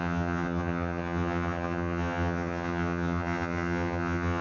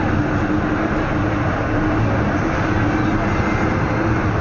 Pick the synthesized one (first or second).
first